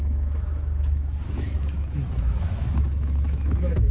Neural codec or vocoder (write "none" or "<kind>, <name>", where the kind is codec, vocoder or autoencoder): autoencoder, DAC-VAE